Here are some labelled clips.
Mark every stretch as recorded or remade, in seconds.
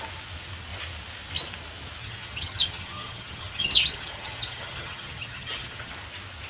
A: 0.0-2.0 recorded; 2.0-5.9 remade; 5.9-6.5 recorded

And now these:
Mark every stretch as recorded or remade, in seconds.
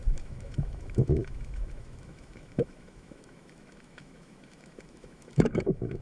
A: 0.0-6.0 remade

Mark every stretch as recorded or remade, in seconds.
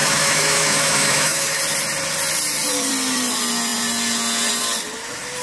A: 0.0-1.6 remade; 1.6-5.4 recorded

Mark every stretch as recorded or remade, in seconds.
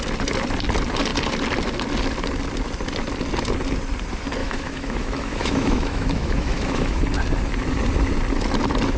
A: 0.0-4.4 recorded; 4.4-7.0 remade; 7.0-9.0 recorded